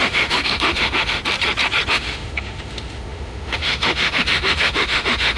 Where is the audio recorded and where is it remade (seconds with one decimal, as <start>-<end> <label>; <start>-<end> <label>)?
0.0-1.2 remade; 1.2-1.9 recorded; 1.9-5.4 remade